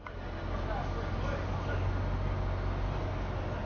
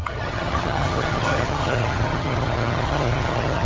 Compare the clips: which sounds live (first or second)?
first